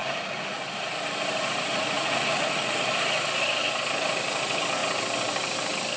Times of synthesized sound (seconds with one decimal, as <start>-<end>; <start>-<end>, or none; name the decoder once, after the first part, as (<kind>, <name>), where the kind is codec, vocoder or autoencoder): 0.0-0.6 (vocoder, Vocos); 1.7-2.9